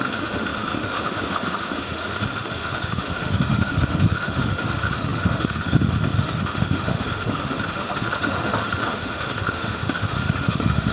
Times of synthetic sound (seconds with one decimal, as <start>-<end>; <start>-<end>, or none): 0.0-10.9